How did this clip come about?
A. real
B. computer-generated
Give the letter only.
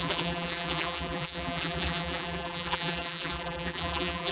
B